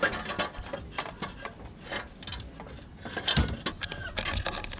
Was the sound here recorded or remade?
recorded